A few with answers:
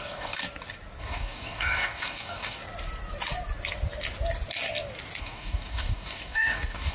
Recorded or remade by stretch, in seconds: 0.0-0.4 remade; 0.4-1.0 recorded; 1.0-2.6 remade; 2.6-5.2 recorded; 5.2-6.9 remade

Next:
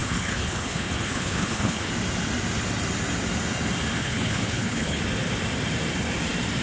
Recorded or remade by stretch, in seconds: 0.0-1.9 remade; 1.9-4.0 recorded; 4.0-5.0 remade; 5.0-6.6 recorded